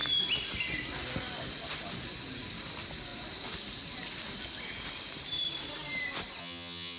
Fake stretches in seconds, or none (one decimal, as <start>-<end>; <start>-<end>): 6.4-7.0